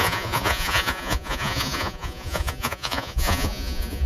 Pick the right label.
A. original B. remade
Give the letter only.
B